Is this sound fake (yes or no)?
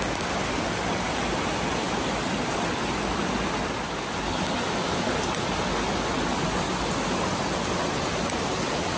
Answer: no